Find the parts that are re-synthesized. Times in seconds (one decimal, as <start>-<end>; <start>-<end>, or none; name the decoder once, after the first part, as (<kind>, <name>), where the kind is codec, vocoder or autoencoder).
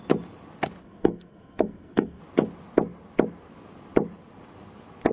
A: 0.8-2.2 (codec, SNAC)